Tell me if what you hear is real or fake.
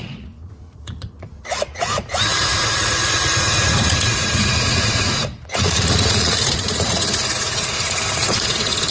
fake